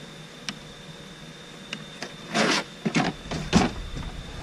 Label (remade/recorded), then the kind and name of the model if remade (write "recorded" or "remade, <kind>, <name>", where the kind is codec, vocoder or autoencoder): recorded